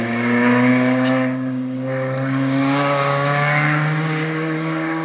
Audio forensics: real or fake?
fake